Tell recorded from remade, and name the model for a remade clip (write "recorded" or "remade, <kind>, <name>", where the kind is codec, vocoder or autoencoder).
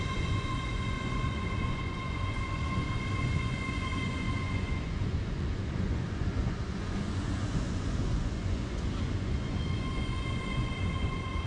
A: remade, vocoder, Vocos